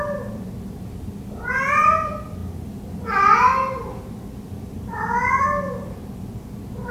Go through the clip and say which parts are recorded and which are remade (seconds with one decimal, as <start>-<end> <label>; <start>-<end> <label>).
0.0-6.9 recorded